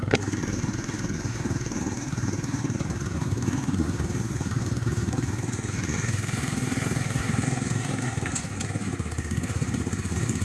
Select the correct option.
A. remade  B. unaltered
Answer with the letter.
A